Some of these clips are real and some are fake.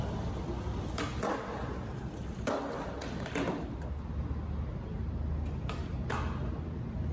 real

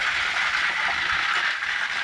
real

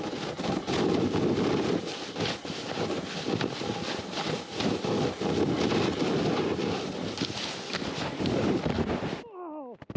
real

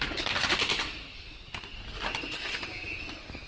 real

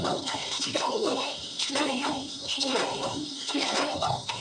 fake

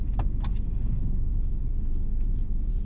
fake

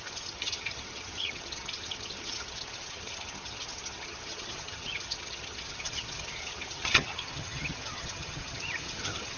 fake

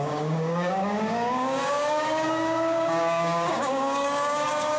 fake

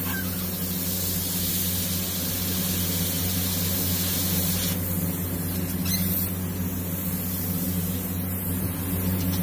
real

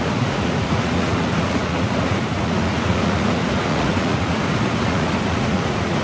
fake